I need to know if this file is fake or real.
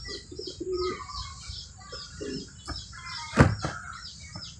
real